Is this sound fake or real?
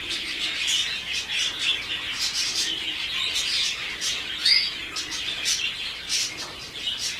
real